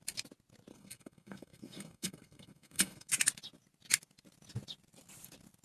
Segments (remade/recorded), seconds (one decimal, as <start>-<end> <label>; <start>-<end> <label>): 0.0-0.7 recorded; 0.7-3.1 remade; 3.1-5.6 recorded